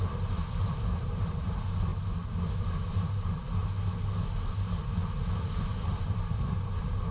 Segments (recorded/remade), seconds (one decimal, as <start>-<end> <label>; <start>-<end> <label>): 0.0-0.6 recorded; 0.6-1.9 remade; 1.9-4.5 recorded; 4.5-5.0 remade; 5.0-5.6 recorded; 5.6-7.1 remade